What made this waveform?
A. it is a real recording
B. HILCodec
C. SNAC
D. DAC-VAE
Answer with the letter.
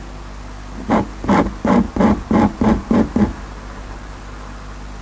A